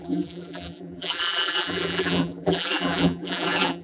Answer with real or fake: fake